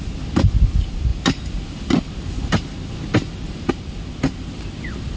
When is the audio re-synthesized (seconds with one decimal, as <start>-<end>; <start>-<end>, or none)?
none

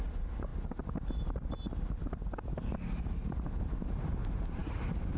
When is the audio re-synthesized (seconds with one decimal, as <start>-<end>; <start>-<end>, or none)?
none

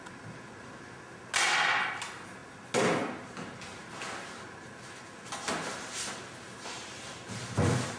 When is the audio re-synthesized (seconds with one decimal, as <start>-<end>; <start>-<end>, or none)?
none

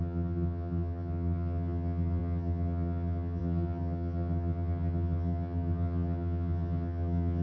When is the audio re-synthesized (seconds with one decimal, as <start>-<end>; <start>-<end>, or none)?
0.0-7.4

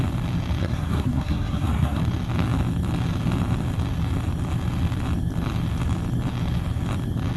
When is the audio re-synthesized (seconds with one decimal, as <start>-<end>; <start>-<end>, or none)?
0.6-2.0

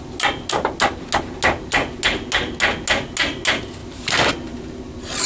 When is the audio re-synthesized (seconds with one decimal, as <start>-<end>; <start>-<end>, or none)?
3.8-4.3

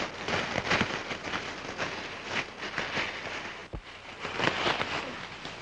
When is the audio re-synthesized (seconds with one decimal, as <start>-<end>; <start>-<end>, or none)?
none